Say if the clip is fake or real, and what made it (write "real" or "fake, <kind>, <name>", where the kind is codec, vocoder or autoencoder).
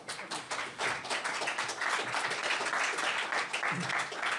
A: real